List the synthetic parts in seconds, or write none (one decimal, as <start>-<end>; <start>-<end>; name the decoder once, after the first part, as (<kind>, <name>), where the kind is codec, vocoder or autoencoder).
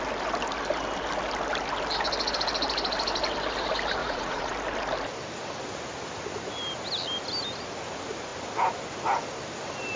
4.0-4.5 (vocoder, Vocos)